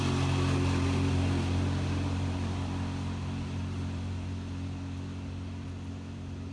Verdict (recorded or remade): recorded